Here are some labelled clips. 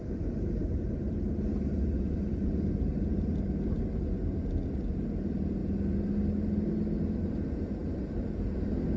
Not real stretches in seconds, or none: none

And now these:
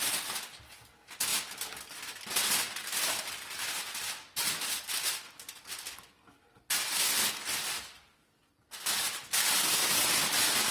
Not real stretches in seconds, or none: none

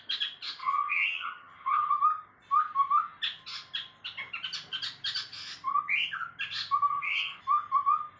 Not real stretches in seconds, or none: 0.6-1.9; 6.9-7.4

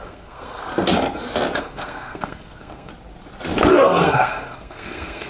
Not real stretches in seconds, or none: 0.0-0.7; 1.6-2.9; 3.7-5.3

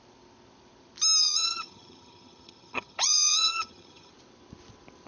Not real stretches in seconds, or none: 1.2-4.1

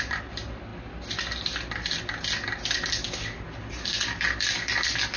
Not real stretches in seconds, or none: none

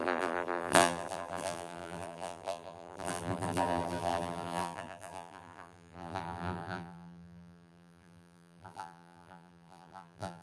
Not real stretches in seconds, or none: 0.0-10.4

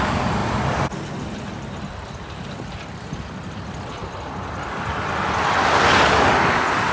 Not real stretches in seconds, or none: none